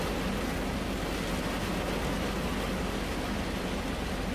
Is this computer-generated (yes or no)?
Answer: no